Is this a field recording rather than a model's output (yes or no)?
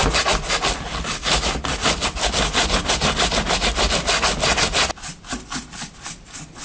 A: yes